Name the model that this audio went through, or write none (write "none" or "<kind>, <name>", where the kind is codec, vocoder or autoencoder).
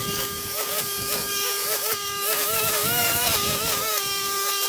codec, DAC